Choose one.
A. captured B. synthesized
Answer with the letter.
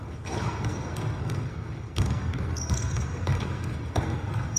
B